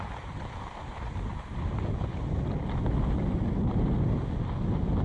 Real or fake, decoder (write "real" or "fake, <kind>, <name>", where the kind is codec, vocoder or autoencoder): real